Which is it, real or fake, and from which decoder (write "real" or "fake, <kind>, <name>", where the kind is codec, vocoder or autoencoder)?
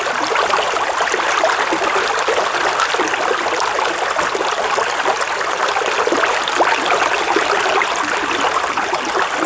real